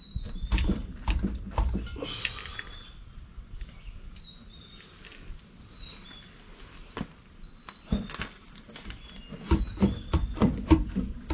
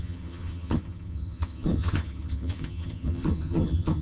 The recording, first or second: first